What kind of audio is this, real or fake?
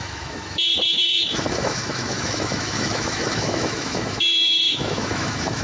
fake